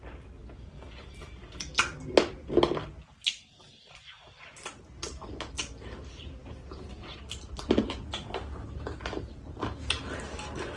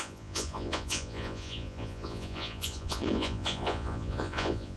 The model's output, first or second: second